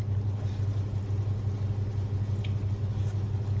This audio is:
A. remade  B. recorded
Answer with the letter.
B